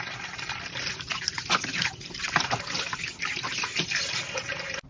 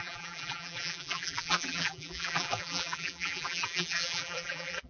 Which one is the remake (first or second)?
second